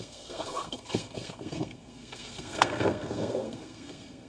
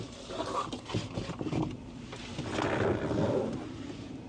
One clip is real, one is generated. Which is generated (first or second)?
first